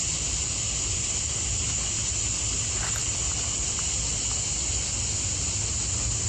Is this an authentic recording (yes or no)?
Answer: yes